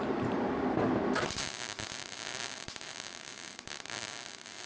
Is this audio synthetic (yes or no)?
yes